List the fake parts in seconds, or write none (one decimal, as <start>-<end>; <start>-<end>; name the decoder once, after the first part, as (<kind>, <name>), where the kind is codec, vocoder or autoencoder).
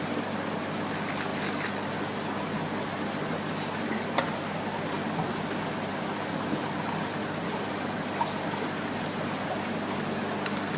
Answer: 1.3-2.0 (vocoder, BigVGAN v2); 5.9-7.7